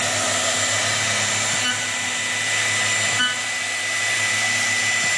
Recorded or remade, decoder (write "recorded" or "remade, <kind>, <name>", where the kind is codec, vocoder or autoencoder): recorded